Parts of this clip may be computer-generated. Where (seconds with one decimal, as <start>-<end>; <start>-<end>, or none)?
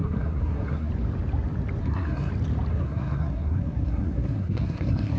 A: 0.0-0.9; 1.8-2.3; 2.7-5.2